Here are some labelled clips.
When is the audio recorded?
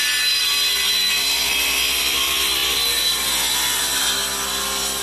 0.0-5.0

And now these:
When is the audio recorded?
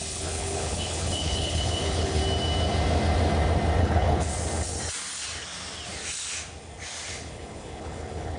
2.2-3.8; 4.3-7.1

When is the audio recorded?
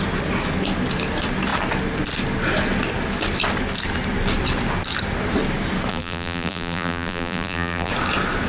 0.0-5.9; 7.9-8.5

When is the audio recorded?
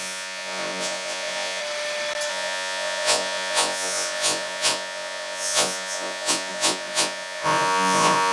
1.6-2.3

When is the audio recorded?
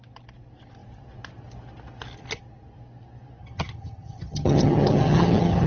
0.0-3.4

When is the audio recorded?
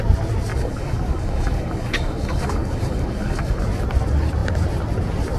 0.0-0.5; 3.6-5.4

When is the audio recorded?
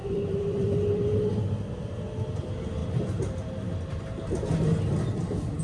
1.3-5.6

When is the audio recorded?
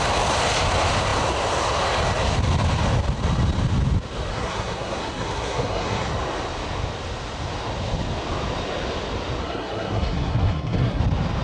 0.0-4.3; 6.1-9.4; 11.0-11.4